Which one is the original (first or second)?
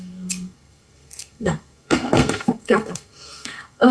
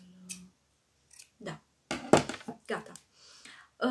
second